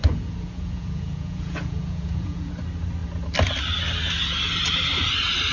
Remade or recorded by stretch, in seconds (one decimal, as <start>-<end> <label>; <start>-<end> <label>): 0.0-2.5 remade; 2.5-5.5 recorded